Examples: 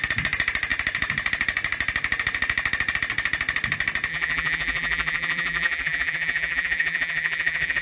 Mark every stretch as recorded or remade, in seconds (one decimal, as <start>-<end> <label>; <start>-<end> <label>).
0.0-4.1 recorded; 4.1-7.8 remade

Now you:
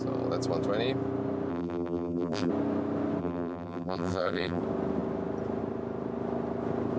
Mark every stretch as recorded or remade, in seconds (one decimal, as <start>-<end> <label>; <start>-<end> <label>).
0.0-1.5 recorded; 1.5-2.5 remade; 2.5-3.2 recorded; 3.2-4.6 remade; 4.6-7.0 recorded

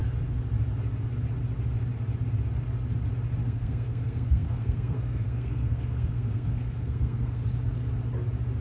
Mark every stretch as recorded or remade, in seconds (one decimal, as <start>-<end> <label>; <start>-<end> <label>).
0.0-3.4 recorded; 3.4-7.4 remade; 7.4-8.6 recorded

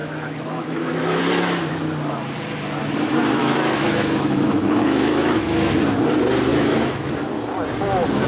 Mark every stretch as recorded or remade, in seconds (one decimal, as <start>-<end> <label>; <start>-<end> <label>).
0.0-1.2 remade; 1.2-3.4 recorded; 3.4-5.7 remade; 5.7-6.5 recorded; 6.5-7.1 remade; 7.1-8.3 recorded

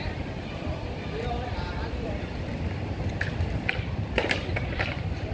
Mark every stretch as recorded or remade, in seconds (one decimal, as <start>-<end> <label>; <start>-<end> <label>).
0.0-5.3 remade

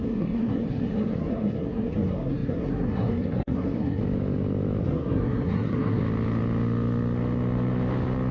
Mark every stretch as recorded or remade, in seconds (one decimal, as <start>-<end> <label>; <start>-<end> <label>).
0.0-4.0 remade; 4.0-4.8 recorded; 4.8-6.0 remade; 6.0-8.3 recorded

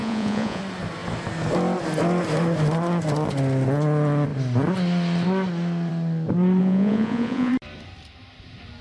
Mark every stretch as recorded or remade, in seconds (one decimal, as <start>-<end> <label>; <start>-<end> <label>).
0.0-0.6 remade; 0.6-6.6 recorded; 6.6-7.5 remade; 7.5-8.8 recorded